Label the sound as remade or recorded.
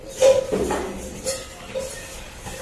recorded